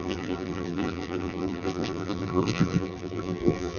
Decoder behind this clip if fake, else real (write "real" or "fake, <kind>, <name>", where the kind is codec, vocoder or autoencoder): fake, vocoder, BigVGAN v2